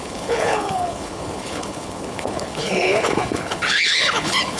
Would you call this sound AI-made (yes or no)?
yes